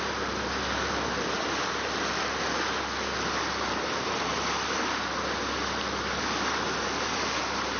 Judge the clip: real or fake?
real